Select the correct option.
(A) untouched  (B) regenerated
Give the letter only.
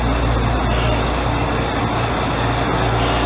A